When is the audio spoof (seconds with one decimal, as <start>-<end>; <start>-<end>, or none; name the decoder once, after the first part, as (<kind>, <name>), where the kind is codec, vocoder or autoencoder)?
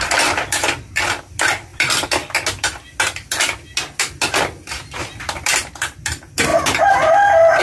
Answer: none